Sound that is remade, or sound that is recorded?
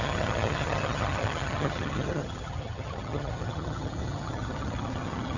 remade